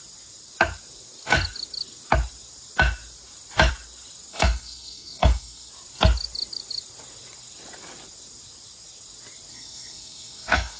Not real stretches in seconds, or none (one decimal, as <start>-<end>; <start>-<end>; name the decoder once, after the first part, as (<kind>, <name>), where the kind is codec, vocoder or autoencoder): 4.3-5.7 (codec, SNAC); 9.5-10.8